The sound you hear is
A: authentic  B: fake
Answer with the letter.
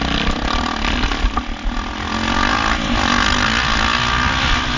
A